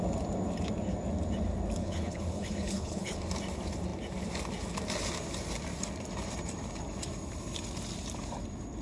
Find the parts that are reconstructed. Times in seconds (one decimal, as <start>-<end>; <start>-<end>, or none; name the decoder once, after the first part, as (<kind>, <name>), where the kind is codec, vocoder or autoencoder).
1.8-3.2 (codec, HILCodec)